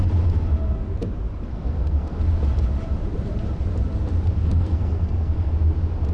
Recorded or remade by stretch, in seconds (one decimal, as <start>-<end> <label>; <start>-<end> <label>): 0.0-1.5 recorded; 1.5-2.2 remade; 2.2-4.4 recorded; 4.4-5.5 remade; 5.5-6.1 recorded